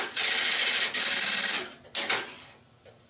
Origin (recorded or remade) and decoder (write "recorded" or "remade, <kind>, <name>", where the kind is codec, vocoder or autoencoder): recorded